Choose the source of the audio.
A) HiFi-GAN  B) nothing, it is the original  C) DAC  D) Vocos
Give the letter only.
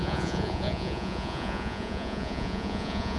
D